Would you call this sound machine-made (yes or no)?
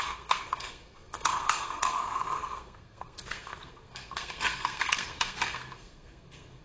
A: yes